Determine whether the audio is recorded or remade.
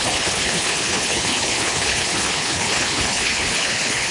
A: remade